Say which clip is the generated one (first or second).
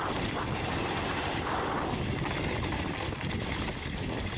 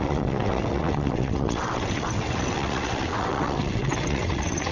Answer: second